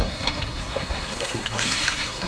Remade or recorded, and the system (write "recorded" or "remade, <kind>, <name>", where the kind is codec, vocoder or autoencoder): remade, codec, SNAC